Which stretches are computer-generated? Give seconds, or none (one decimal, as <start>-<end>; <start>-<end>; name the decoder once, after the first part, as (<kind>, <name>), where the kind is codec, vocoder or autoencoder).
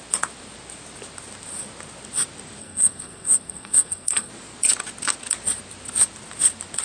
2.6-4.3 (codec, SNAC)